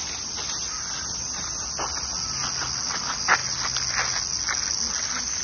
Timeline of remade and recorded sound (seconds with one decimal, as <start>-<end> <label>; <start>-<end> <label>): 0.0-5.4 recorded